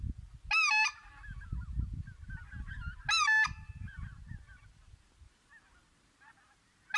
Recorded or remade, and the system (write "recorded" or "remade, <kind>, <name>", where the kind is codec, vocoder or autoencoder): recorded